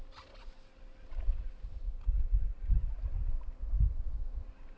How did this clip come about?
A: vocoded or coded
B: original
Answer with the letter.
B